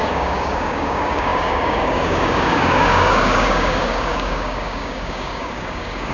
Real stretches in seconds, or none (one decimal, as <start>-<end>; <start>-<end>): none